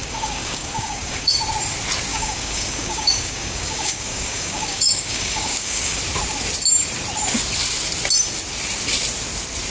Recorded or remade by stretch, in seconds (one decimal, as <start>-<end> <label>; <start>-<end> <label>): 0.0-1.4 remade; 1.4-2.1 recorded; 2.1-6.0 remade; 6.0-9.7 recorded